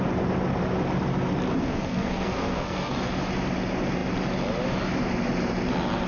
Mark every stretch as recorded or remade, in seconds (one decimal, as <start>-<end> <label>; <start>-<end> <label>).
0.0-1.5 recorded; 1.5-2.9 remade; 2.9-6.1 recorded